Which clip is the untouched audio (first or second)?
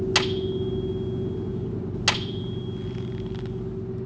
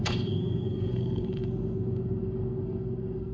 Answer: first